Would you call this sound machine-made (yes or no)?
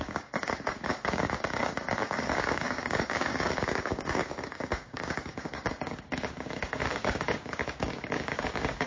yes